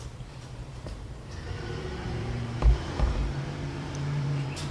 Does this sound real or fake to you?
fake